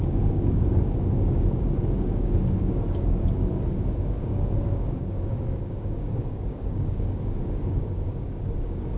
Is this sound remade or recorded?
remade